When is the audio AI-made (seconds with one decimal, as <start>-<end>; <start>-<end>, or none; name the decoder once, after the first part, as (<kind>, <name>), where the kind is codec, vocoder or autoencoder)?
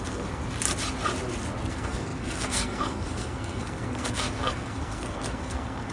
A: 0.0-0.4 (codec, SNAC); 1.7-5.9